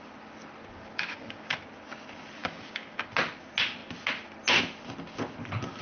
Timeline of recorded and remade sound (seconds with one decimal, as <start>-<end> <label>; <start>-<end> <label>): 0.0-0.6 recorded; 0.6-1.6 remade; 1.6-2.4 recorded; 2.4-3.1 remade; 3.1-5.8 recorded